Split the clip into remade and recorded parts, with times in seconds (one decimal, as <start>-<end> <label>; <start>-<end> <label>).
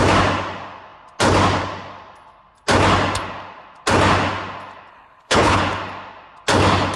0.0-4.9 recorded; 4.9-5.6 remade; 5.6-7.0 recorded